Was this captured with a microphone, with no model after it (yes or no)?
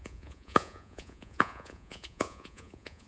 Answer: no